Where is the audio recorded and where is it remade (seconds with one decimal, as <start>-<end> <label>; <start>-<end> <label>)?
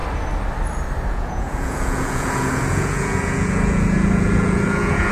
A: 0.0-1.1 recorded; 1.1-5.1 remade